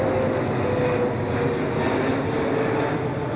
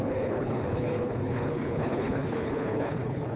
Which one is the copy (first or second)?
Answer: second